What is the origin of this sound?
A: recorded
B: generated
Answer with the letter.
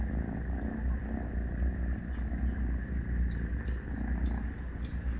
A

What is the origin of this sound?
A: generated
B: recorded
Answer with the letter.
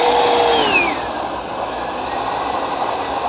B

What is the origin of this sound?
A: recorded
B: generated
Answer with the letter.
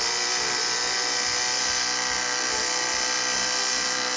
A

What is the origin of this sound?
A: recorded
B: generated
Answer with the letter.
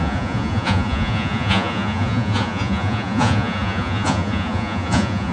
B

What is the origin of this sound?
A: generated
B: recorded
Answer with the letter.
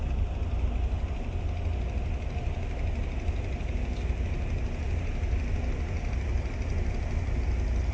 B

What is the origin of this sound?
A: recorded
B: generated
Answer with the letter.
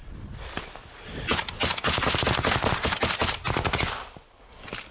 A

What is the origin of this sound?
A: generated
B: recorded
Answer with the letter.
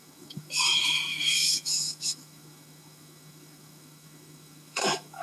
A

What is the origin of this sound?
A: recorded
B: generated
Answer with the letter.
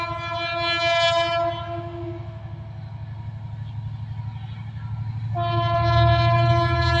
A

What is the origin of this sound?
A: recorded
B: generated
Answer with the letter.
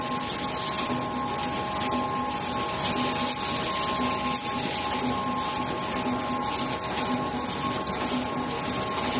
A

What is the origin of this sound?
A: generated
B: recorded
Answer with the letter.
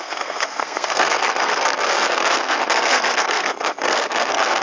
A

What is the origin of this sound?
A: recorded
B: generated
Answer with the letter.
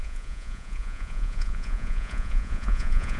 B